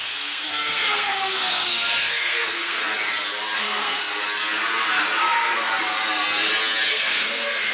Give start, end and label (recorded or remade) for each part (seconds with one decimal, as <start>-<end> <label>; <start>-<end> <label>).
0.0-2.8 remade; 2.8-3.6 recorded; 3.6-4.1 remade; 4.1-5.2 recorded; 5.2-5.7 remade; 5.7-6.9 recorded; 6.9-7.7 remade